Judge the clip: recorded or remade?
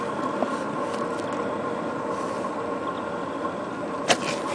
recorded